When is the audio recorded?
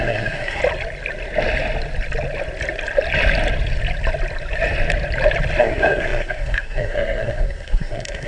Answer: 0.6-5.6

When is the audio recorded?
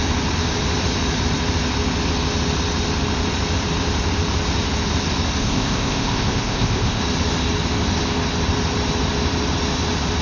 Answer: 0.0-5.4; 7.0-10.2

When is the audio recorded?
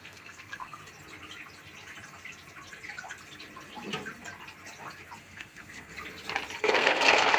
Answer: 0.8-5.2; 5.9-6.6